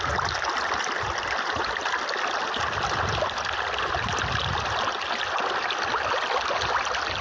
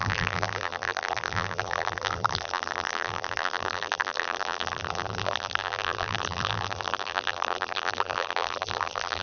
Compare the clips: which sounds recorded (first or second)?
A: first